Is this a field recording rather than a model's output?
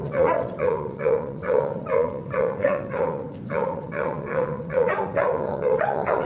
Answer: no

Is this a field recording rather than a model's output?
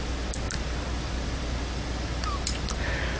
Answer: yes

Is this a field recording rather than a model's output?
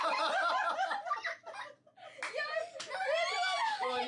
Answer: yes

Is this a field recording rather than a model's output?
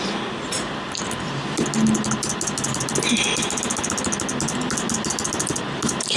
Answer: yes